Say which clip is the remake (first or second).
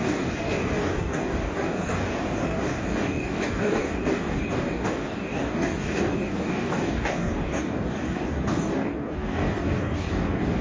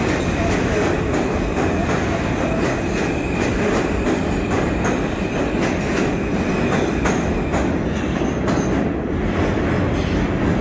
first